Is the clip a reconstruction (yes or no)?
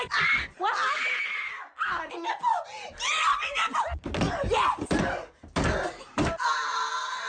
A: no